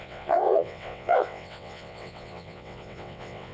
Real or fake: fake